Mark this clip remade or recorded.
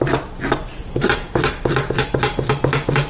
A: recorded